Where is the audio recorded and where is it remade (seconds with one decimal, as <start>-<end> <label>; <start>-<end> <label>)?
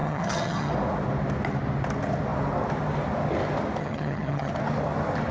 0.0-0.7 remade; 0.7-3.8 recorded; 3.8-4.5 remade; 4.5-5.3 recorded